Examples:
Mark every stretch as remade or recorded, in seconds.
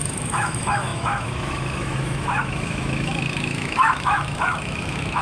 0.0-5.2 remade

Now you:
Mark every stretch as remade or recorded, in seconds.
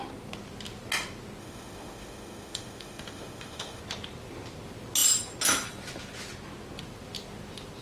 0.0-1.4 recorded; 1.4-3.8 remade; 3.8-7.8 recorded